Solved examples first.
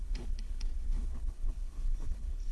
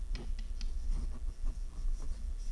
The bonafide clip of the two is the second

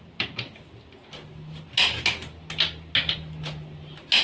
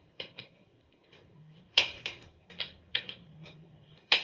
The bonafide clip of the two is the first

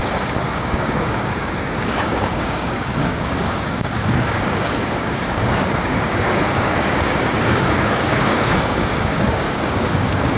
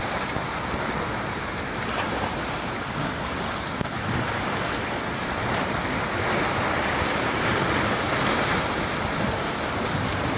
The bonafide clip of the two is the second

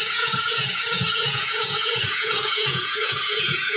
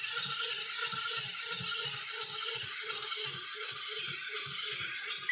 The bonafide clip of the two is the second